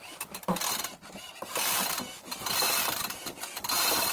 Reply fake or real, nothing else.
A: real